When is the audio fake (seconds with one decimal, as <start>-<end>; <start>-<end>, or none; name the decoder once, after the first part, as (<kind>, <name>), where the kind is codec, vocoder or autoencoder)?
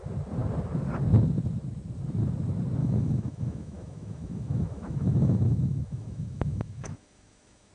2.8-7.7 (autoencoder, DAC-VAE)